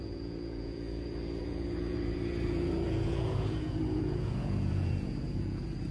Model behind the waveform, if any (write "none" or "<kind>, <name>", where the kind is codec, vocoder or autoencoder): vocoder, Vocos